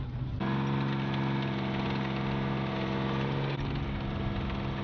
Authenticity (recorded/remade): recorded